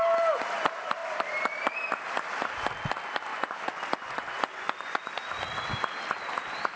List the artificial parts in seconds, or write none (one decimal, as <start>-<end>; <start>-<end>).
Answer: 3.3-5.1